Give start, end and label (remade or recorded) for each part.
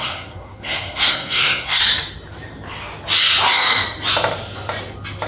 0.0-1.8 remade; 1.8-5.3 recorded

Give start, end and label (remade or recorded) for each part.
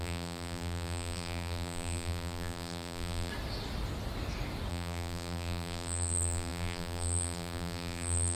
0.0-3.3 remade; 3.3-4.7 recorded; 4.7-8.4 remade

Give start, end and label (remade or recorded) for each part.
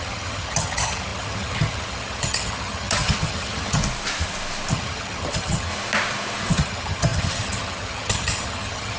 0.0-3.8 remade; 3.8-4.7 recorded; 4.7-5.7 remade; 5.7-6.5 recorded; 6.5-9.0 remade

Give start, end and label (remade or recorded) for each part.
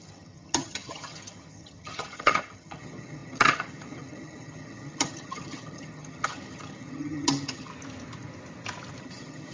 0.0-7.7 remade; 7.7-9.0 recorded; 9.0-9.5 remade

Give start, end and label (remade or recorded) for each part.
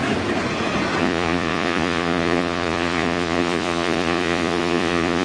0.0-1.0 recorded; 1.0-5.2 remade